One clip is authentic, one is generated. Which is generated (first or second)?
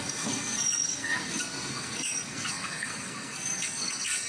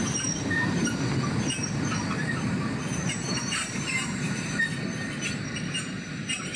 first